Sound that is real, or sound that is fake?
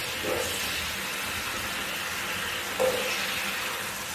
real